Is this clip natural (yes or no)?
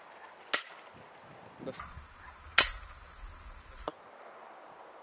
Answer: yes